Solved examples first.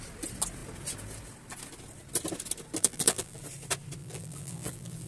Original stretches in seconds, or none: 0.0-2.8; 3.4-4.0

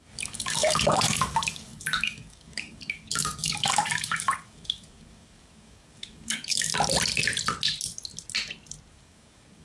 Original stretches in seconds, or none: 6.7-8.9

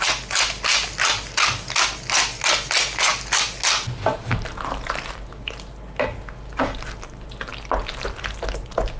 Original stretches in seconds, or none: 0.0-9.0

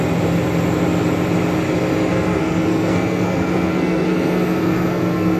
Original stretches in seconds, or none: 0.0-2.1

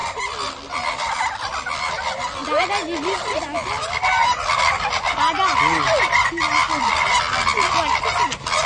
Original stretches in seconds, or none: 0.0-8.7

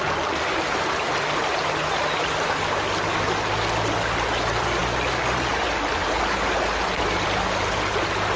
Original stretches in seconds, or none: 0.0-8.4